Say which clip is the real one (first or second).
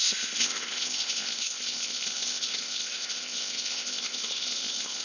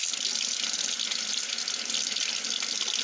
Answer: second